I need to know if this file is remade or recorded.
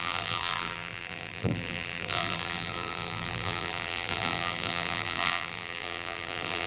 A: remade